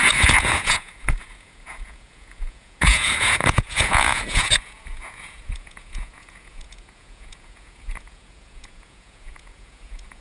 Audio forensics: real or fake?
fake